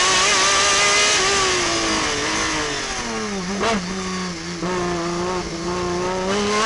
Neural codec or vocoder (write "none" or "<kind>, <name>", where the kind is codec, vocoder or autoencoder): none